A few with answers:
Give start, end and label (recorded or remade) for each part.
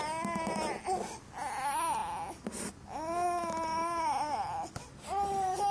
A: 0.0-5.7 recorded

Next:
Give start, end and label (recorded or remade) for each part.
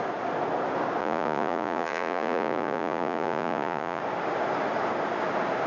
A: 0.0-1.0 recorded; 1.0-4.0 remade; 4.0-5.7 recorded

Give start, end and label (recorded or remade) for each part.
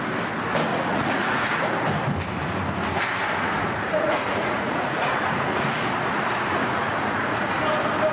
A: 0.0-0.7 recorded; 0.7-1.6 remade; 1.6-3.6 recorded; 3.6-7.5 remade; 7.5-8.1 recorded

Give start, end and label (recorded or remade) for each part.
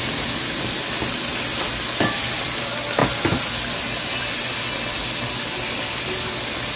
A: 0.0-6.8 recorded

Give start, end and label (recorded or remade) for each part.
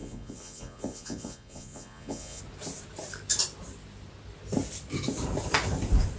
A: 0.0-2.4 remade; 2.4-6.2 recorded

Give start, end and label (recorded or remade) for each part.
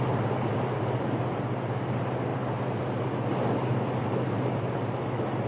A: 0.0-5.5 recorded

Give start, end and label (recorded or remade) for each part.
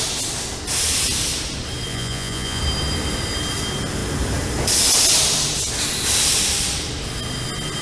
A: 0.0-1.9 recorded; 1.9-2.6 remade; 2.6-7.8 recorded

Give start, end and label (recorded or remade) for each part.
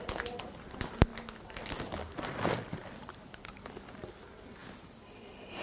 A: 0.0-5.6 recorded